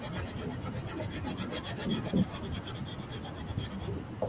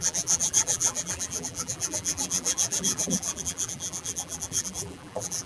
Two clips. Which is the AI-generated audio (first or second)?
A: second